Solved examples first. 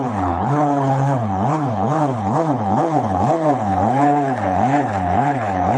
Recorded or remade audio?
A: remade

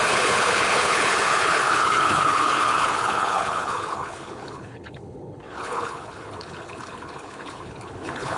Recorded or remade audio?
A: remade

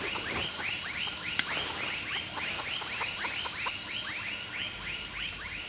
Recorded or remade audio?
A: recorded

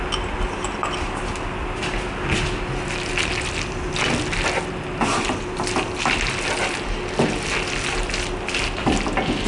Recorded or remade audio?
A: recorded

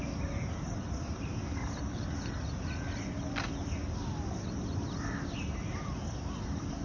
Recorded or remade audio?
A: recorded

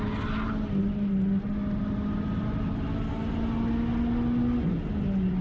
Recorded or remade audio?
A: recorded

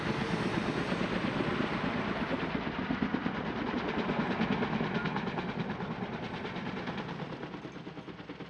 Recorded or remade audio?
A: recorded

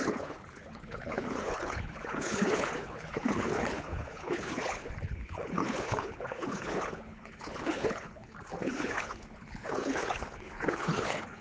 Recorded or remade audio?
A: remade